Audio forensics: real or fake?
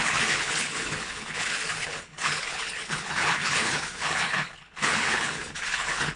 fake